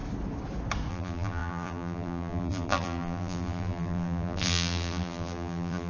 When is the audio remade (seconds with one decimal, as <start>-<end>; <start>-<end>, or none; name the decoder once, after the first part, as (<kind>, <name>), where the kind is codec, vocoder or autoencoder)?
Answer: 0.9-5.9 (vocoder, BigVGAN v2)